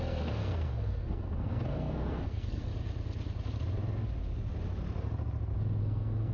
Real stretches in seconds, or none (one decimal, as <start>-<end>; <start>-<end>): 2.7-5.8